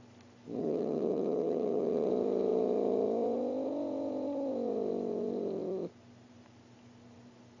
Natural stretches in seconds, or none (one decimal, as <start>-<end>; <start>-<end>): 0.0-0.6; 2.1-7.6